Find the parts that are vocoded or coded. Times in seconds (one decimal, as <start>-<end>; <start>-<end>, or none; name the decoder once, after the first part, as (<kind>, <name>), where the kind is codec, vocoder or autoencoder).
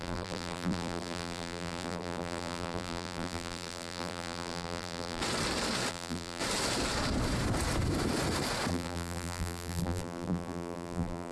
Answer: 0.0-5.2 (vocoder, BigVGAN v2); 5.9-6.4; 8.7-11.3